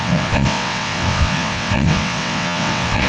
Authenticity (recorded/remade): remade